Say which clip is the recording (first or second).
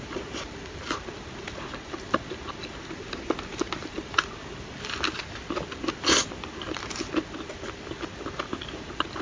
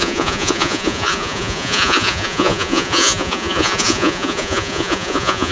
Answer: first